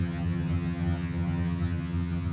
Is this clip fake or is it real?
fake